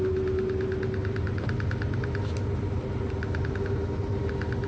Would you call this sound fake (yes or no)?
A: no